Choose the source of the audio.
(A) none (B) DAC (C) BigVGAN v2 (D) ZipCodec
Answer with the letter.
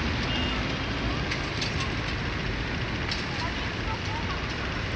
A